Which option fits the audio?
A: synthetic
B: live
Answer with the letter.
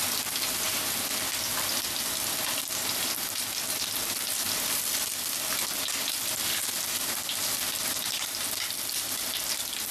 B